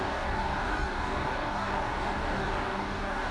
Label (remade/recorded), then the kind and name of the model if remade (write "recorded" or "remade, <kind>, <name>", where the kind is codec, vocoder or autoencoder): remade, codec, DAC